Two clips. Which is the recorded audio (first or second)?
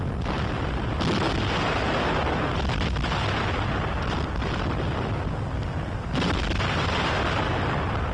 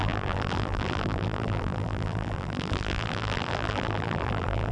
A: first